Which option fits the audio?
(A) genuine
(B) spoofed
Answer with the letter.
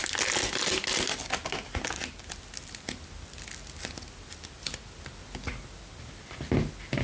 A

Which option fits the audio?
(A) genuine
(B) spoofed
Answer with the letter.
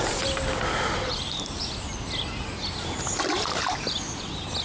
A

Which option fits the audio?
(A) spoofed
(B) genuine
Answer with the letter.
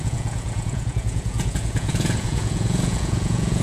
A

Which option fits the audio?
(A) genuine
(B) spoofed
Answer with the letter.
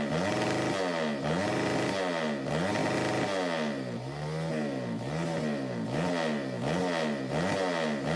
A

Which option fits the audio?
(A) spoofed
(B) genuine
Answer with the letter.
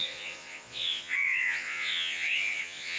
A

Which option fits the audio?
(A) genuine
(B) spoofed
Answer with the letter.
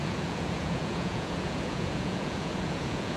B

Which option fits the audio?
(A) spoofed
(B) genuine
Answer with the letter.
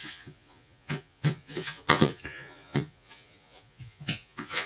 A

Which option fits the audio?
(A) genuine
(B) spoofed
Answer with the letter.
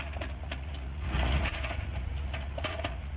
B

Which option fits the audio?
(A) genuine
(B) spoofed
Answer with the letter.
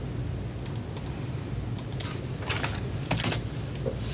A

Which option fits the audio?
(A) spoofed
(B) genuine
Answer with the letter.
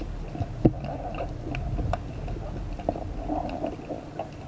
B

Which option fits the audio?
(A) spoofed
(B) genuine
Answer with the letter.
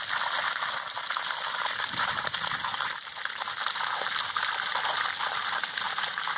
B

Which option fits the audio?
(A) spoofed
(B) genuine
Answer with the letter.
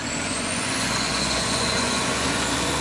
A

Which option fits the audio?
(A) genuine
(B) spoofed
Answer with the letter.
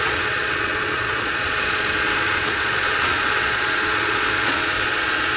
B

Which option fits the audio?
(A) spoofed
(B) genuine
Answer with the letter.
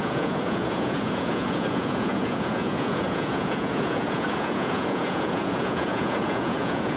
A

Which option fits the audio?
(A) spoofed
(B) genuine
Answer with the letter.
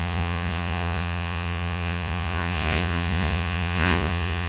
A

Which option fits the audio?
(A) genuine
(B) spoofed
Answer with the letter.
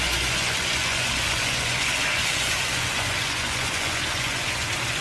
B